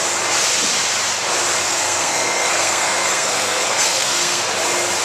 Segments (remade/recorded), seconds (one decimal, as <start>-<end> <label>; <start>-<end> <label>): 0.0-1.6 recorded; 1.6-4.4 remade; 4.4-5.0 recorded